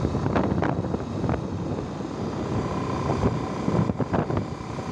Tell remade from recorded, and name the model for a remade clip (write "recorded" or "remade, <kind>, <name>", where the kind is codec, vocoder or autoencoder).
recorded